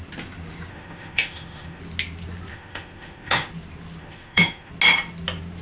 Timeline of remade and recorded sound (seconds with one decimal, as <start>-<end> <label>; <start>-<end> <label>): 0.0-0.7 recorded; 0.7-1.8 remade; 1.8-2.5 recorded; 2.5-3.5 remade; 3.5-4.0 recorded; 4.0-4.7 remade; 4.7-5.6 recorded